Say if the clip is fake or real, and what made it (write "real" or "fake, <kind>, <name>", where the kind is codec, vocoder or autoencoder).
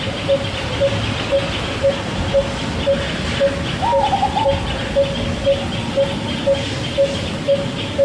real